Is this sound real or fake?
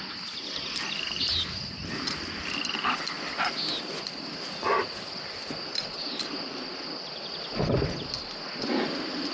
real